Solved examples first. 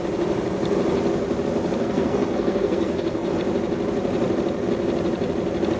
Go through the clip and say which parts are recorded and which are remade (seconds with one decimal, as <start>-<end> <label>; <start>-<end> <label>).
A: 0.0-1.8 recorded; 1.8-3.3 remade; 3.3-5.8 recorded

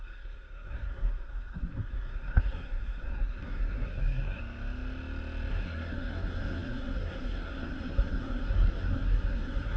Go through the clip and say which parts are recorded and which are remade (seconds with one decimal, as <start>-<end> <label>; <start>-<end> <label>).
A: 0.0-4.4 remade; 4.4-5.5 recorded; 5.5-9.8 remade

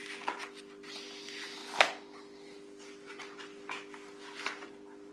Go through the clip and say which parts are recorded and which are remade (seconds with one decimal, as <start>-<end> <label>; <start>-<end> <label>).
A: 0.0-5.1 recorded

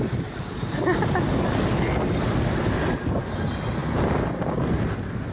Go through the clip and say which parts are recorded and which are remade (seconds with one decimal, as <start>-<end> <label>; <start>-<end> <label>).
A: 0.0-5.3 recorded